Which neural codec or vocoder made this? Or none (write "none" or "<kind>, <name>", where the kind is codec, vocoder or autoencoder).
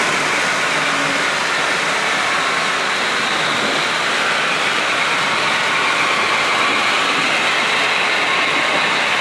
none